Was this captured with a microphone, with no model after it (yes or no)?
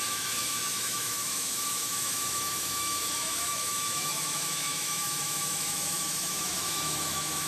no